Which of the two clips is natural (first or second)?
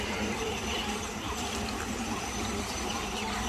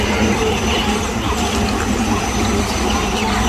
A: second